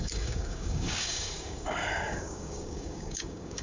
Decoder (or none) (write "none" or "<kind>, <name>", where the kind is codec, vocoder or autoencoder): codec, DAC